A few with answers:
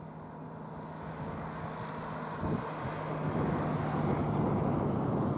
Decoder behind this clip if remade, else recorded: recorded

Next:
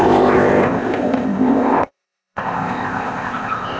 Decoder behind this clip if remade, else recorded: remade, codec, ZipCodec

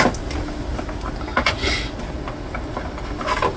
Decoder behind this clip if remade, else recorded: recorded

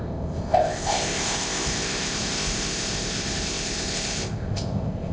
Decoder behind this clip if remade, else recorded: remade, codec, ZipCodec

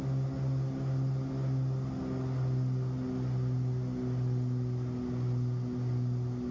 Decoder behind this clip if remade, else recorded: recorded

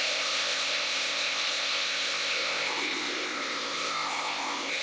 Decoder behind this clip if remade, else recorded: remade, codec, ZipCodec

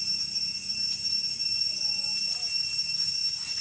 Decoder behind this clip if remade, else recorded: recorded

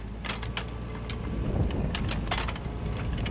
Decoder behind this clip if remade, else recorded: recorded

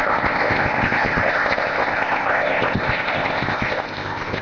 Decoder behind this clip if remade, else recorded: remade, codec, ZipCodec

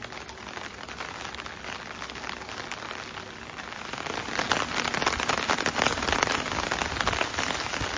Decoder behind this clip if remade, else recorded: recorded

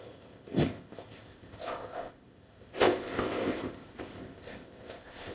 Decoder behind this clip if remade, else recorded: remade, codec, ZipCodec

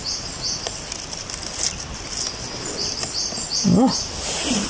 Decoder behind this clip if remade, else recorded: recorded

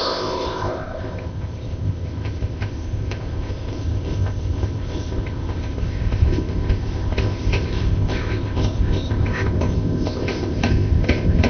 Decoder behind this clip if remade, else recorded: remade, codec, ZipCodec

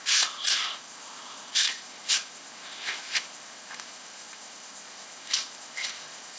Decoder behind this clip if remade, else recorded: remade, codec, ZipCodec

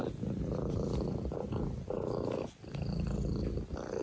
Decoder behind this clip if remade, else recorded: recorded